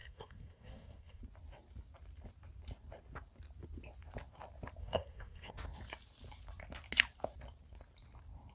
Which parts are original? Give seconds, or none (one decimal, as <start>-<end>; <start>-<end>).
1.2-4.8; 5.5-8.5